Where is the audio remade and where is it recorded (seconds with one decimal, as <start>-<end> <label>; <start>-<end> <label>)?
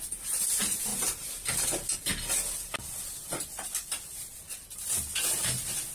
0.0-5.9 recorded